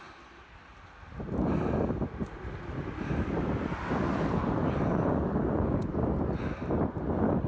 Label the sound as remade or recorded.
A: recorded